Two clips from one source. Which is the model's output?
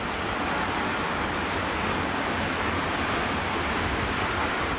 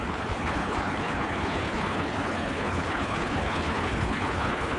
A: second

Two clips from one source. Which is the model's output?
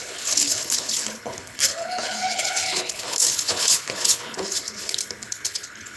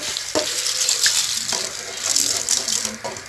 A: first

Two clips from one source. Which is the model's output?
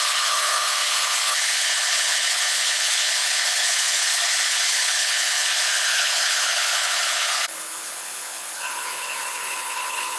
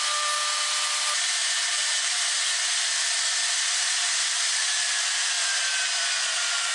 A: first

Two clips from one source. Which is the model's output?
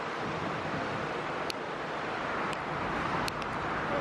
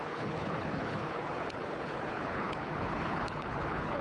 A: second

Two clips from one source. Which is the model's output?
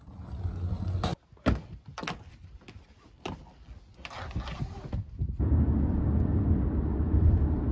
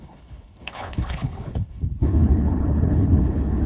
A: second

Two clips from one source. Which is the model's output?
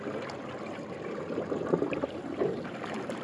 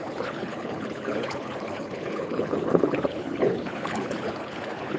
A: second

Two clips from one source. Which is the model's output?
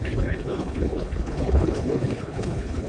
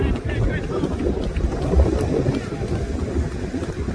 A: first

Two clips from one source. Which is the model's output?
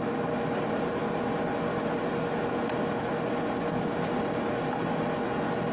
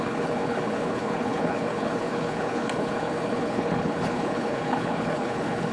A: second